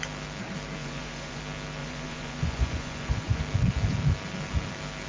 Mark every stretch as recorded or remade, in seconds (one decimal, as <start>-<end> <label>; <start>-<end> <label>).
0.0-0.8 recorded; 0.8-1.4 remade; 1.4-1.8 recorded; 1.8-3.4 remade; 3.4-5.1 recorded